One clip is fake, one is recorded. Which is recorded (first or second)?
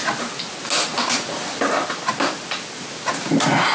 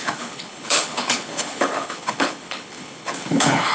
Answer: first